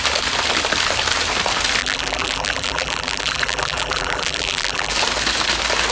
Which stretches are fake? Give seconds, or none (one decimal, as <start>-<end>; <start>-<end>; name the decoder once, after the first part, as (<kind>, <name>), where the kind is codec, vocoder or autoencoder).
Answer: 1.8-4.9 (vocoder, BigVGAN v2)